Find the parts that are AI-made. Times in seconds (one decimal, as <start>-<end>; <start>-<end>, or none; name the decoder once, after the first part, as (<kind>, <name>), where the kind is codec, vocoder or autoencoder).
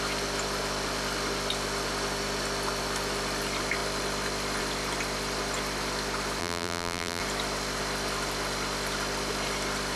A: 6.4-7.2 (vocoder, BigVGAN v2)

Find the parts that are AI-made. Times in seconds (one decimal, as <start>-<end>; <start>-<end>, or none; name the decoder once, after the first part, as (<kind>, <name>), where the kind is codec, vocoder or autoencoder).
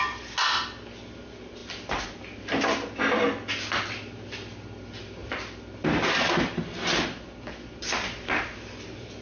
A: none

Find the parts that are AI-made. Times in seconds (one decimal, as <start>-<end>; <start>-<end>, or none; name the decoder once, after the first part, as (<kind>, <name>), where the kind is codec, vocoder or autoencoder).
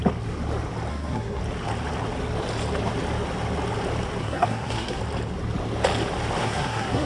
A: 0.9-1.4 (codec, SNAC); 4.2-5.0; 6.4-7.1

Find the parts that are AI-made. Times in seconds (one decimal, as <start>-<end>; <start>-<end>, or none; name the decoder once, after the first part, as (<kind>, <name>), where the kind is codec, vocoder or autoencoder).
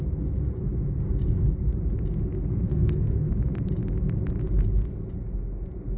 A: 2.5-3.3 (codec, SNAC)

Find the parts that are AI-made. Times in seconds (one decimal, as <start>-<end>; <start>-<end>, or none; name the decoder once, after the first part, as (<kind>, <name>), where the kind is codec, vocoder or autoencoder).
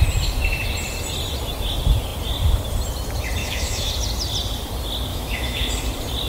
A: 3.4-3.9 (autoencoder, DAC-VAE); 5.1-5.7